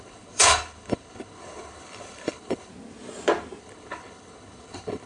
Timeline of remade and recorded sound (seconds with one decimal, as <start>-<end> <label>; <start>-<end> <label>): 0.0-2.7 remade; 2.7-3.6 recorded; 3.6-5.1 remade